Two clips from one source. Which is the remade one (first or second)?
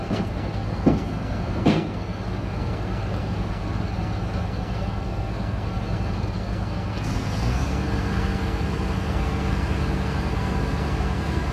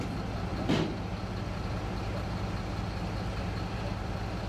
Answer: first